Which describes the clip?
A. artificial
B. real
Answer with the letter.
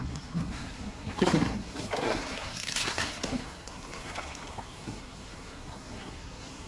A